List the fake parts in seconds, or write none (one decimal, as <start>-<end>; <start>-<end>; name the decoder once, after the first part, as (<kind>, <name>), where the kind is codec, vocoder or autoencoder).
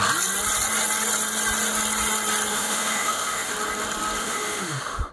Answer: 2.5-3.5 (autoencoder, DAC-VAE); 4.2-5.1